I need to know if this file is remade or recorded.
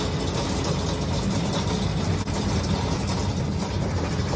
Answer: recorded